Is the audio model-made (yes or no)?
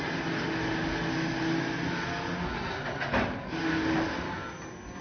no